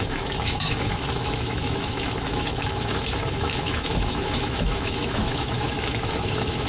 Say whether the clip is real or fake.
fake